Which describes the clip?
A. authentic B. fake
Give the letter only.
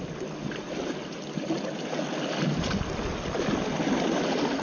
A